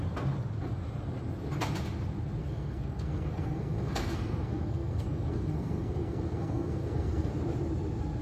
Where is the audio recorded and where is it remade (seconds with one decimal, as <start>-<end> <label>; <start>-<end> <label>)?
0.0-2.4 recorded; 2.4-7.3 remade; 7.3-8.2 recorded